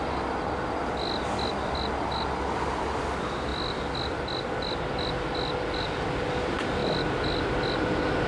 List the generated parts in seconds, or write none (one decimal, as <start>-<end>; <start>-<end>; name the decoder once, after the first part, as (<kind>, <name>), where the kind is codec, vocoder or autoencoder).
none